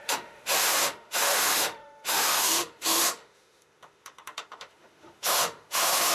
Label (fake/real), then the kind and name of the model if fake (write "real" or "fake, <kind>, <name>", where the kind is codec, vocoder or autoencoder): fake, autoencoder, DAC-VAE